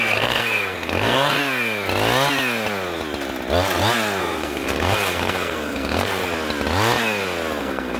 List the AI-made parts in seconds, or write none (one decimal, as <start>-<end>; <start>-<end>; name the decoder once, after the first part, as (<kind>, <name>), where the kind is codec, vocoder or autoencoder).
0.0-1.4 (codec, SNAC); 4.2-6.2; 7.6-8.0